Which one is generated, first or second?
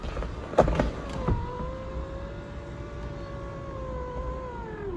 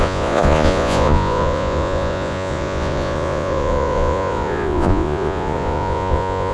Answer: second